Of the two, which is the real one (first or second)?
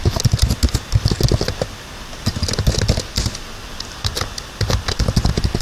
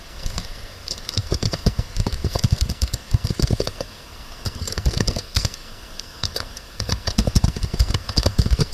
first